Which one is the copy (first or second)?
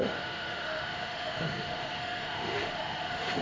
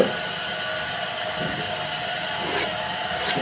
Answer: first